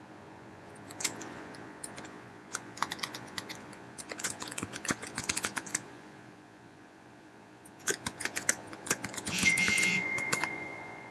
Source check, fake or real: fake